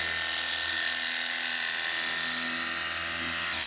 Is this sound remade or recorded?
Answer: recorded